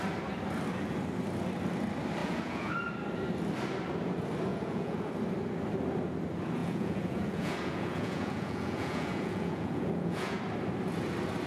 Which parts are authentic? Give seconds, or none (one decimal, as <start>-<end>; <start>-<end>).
0.0-2.2; 2.7-4.5; 5.1-6.6; 10.4-11.5

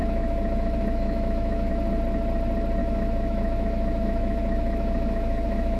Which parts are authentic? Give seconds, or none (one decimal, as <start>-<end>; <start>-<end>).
1.7-2.8

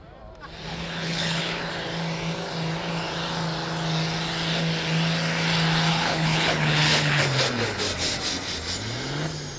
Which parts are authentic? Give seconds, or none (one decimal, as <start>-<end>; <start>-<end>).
0.0-0.7; 1.7-5.9; 7.2-9.6

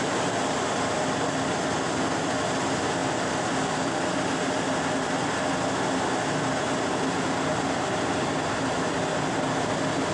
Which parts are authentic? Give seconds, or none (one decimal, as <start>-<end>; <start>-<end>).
0.0-10.1

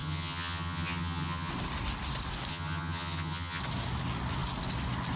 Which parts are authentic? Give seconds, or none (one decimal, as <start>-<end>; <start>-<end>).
1.5-2.5; 3.6-5.2

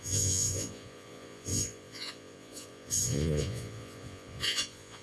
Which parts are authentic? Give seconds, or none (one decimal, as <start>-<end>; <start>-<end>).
none

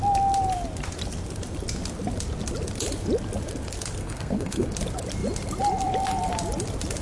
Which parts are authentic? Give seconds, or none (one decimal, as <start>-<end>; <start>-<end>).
0.0-4.0; 4.7-7.0

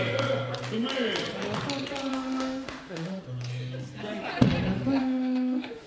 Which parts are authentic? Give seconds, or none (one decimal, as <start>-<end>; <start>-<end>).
0.0-2.1; 3.2-5.0